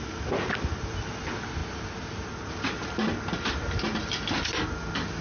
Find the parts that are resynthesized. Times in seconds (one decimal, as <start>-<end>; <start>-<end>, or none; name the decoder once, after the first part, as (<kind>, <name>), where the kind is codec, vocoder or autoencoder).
none